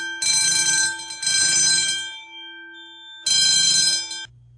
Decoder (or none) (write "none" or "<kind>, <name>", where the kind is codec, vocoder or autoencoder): none